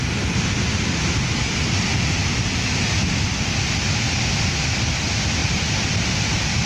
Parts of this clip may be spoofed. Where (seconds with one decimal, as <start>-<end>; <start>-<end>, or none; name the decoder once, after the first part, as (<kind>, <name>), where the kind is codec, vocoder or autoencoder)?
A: 5.4-6.7 (vocoder, BigVGAN v2)